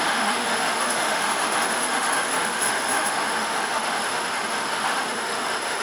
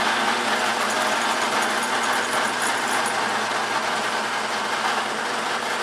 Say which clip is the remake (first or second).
first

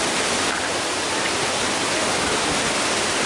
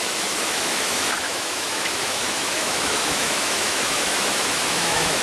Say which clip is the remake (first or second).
second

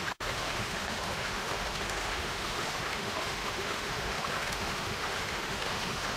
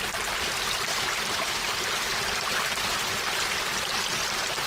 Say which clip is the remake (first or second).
first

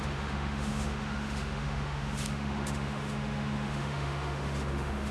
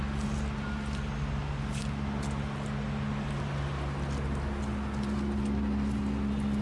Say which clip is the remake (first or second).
first